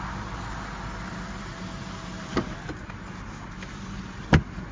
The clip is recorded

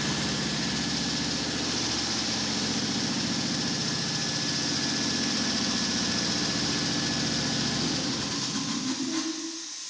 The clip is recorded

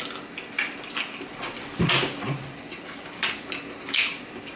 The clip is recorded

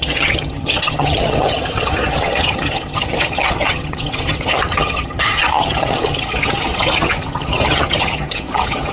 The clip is remade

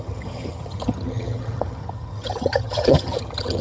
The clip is remade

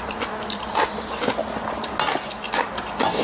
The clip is recorded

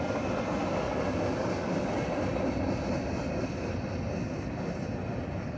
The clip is recorded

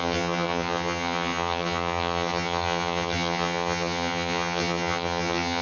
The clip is remade